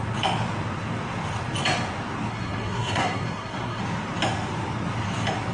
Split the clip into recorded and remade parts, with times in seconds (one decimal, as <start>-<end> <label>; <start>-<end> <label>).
0.0-2.3 recorded; 2.3-3.8 remade; 3.8-5.5 recorded